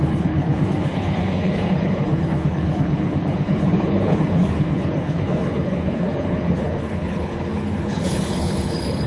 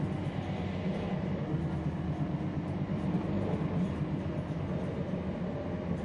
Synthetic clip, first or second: first